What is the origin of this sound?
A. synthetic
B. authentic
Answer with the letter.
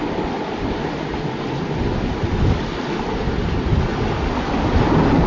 B